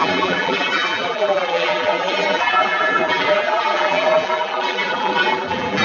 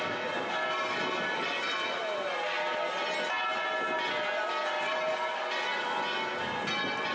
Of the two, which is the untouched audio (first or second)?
second